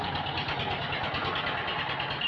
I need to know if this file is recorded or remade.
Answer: recorded